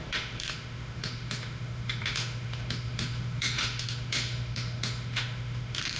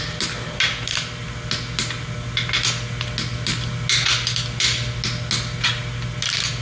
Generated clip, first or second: first